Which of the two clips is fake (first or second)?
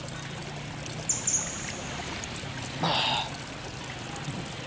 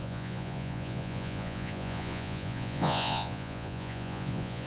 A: second